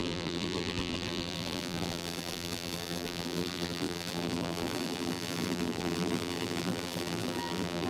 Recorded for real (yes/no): no